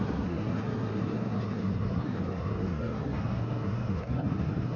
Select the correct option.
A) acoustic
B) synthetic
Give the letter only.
B